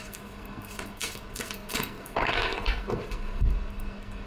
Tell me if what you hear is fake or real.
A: fake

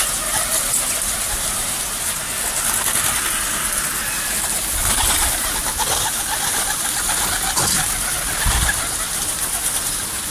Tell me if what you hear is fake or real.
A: real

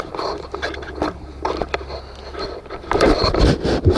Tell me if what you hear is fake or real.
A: real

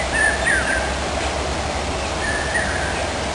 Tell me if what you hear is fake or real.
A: real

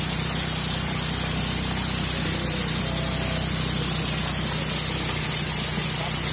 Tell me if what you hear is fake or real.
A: real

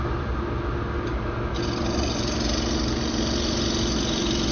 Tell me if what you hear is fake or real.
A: real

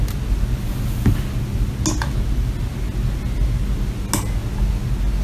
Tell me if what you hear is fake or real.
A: real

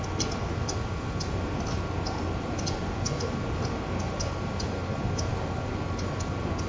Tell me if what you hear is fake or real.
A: real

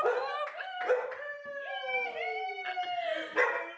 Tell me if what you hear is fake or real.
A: real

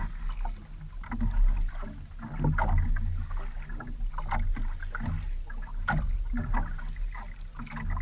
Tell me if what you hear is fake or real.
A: real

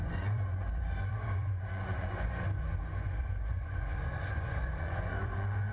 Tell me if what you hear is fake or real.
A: fake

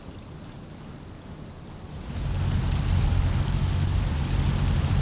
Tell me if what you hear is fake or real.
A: real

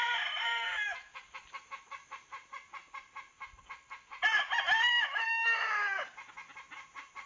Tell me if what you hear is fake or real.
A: real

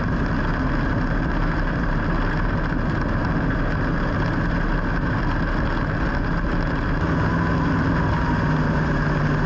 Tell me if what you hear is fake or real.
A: real